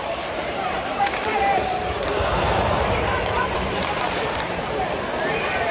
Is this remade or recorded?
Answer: remade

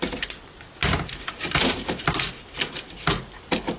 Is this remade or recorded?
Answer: recorded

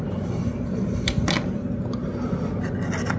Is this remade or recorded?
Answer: recorded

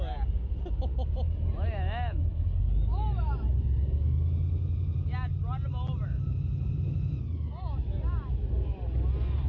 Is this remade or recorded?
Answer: recorded